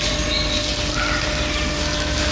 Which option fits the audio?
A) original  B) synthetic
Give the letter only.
A